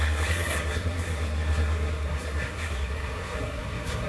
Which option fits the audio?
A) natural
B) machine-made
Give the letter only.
B